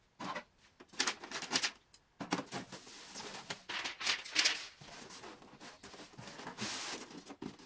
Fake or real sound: real